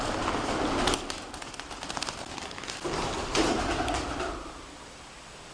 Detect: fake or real real